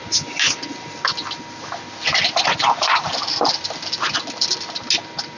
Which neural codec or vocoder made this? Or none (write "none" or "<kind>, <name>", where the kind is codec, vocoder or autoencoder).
none